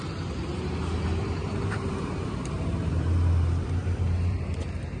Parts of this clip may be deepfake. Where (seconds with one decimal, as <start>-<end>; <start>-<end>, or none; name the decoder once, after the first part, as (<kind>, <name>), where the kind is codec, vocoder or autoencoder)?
1.4-2.9 (vocoder, BigVGAN v2); 3.8-4.4